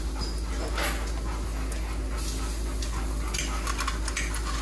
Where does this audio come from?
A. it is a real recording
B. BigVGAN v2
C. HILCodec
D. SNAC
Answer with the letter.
A